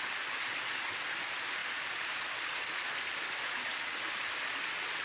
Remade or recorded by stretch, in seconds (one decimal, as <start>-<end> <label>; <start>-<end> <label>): 0.0-1.6 recorded; 1.6-4.6 remade; 4.6-5.0 recorded